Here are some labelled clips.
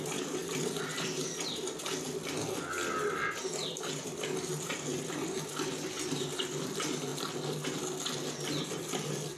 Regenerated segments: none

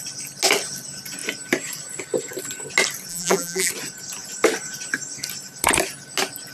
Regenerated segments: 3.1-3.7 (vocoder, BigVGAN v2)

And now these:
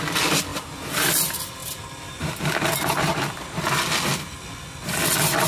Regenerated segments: none